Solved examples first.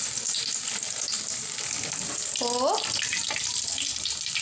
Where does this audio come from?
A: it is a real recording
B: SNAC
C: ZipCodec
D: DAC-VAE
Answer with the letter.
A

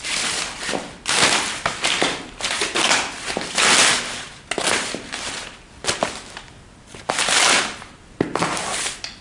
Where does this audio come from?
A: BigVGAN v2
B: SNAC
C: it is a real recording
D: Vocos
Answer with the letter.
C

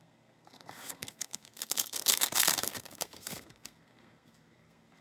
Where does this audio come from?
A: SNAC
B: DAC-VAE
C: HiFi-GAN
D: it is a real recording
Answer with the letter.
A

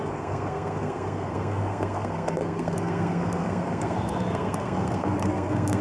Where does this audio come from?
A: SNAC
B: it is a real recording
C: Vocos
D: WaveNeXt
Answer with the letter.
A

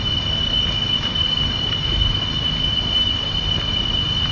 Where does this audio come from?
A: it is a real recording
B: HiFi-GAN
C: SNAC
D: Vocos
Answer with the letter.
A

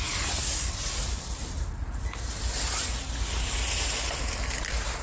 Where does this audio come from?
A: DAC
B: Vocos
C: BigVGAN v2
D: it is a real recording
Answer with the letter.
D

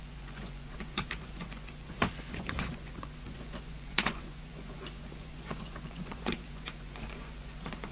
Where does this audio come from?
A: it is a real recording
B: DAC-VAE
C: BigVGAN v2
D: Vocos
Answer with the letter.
D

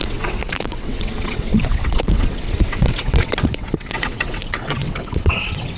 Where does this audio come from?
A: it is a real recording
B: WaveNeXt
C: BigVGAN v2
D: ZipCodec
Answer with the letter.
B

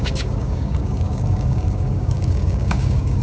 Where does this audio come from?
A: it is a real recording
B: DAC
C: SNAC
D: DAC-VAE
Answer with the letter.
B